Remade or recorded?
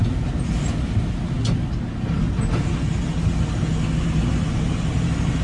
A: recorded